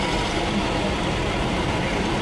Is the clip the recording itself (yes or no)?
yes